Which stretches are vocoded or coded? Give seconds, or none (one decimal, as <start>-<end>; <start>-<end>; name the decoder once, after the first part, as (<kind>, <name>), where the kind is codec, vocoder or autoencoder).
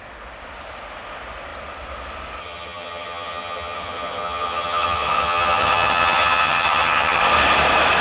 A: 2.4-7.2 (vocoder, HiFi-GAN)